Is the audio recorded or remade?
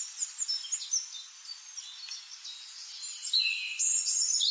recorded